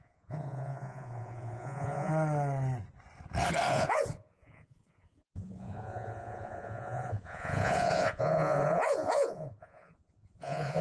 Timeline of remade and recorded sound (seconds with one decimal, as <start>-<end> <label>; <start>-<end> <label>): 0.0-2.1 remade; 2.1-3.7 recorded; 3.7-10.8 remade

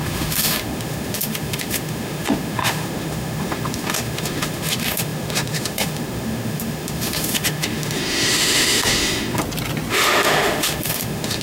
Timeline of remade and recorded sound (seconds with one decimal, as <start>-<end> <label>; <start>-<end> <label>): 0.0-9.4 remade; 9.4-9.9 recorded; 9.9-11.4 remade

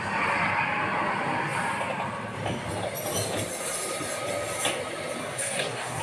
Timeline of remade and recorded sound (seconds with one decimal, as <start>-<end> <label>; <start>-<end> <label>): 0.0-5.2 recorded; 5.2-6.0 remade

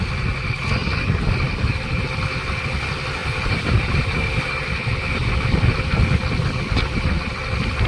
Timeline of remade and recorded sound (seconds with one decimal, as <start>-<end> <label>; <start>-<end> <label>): 0.0-3.2 recorded; 3.2-4.2 remade; 4.2-7.9 recorded

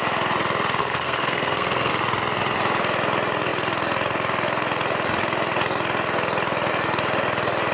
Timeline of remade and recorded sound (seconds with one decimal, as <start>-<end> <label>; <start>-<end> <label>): 0.0-0.8 recorded; 0.8-1.9 remade; 1.9-7.7 recorded

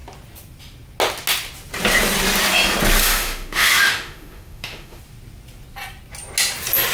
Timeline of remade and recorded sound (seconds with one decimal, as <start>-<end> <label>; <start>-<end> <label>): 0.0-3.0 recorded; 3.0-5.0 remade; 5.0-6.9 recorded